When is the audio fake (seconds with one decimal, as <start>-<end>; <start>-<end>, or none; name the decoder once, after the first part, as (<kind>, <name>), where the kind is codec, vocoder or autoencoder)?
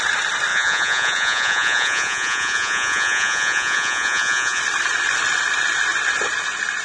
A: 0.5-4.6 (vocoder, Vocos)